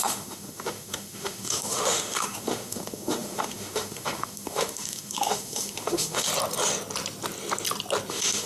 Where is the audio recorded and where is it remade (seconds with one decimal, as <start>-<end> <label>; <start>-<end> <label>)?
0.0-6.3 remade; 6.3-8.1 recorded; 8.1-8.5 remade